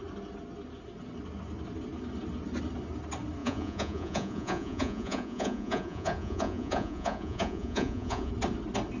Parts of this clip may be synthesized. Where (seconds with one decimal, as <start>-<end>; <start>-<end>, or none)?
3.4-8.3